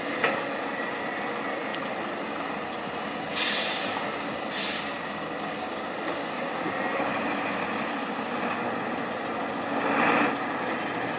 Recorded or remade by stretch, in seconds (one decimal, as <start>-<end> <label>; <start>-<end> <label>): 0.0-11.2 recorded